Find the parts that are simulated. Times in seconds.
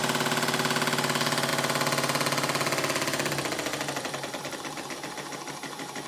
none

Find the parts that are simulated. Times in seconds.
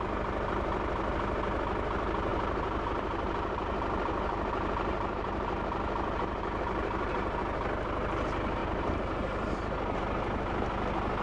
2.3-7.4 (vocoder, BigVGAN v2); 8.6-10.0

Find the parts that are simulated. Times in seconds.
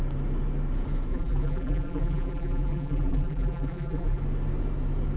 1.1-4.2 (vocoder, BigVGAN v2)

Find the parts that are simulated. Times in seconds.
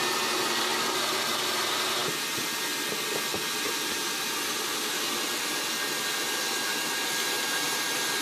none